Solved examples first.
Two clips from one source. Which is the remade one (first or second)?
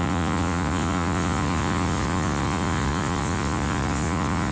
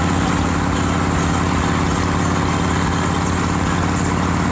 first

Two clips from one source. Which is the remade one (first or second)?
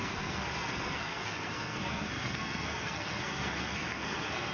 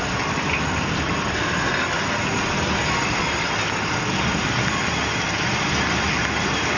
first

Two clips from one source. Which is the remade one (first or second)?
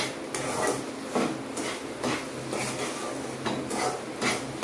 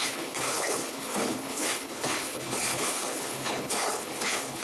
second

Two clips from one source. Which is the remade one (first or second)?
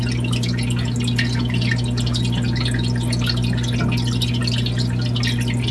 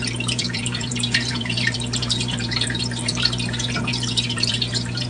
second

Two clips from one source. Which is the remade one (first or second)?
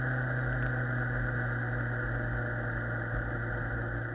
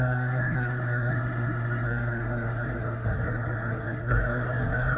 second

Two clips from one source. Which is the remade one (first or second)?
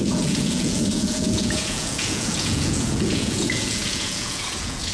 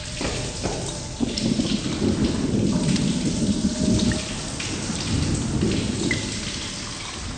first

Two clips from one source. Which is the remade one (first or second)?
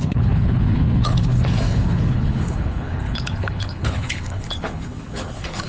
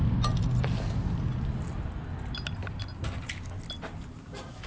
first